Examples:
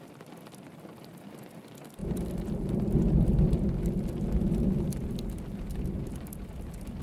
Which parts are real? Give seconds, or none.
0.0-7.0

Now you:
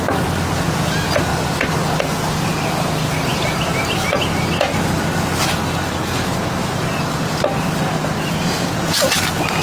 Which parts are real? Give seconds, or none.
0.0-9.6

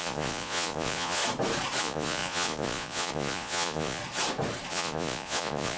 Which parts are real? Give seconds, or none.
1.2-1.8; 4.0-4.7